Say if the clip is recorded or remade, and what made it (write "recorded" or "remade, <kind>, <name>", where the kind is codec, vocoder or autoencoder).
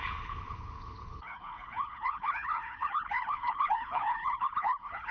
remade, codec, HILCodec